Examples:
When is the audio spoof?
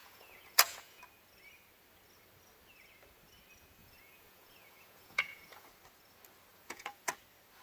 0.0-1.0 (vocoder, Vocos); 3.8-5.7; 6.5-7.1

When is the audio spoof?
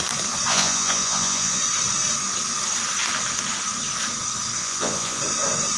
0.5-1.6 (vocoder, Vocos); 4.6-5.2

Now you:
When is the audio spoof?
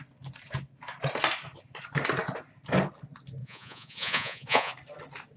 3.4-4.7 (vocoder, Vocos)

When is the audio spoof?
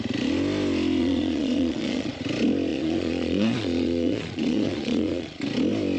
1.0-2.1 (vocoder, Vocos); 2.7-5.4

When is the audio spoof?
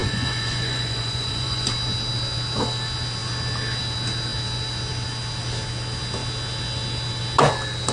0.0-1.7 (vocoder, Vocos)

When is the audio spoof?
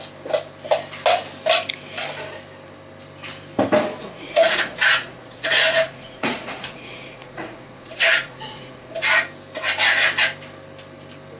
4.0-9.0 (vocoder, Vocos)